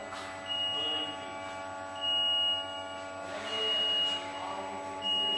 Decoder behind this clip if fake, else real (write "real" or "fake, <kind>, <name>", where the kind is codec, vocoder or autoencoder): real